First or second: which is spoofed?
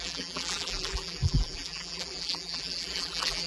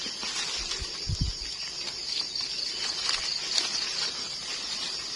first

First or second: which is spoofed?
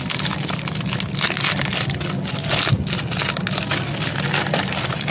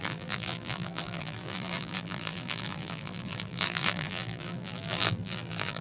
second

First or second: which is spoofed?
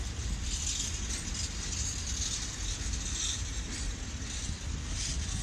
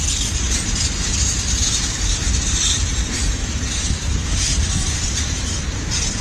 second